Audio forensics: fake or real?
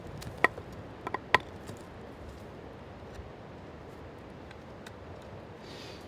real